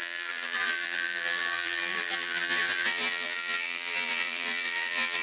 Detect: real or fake fake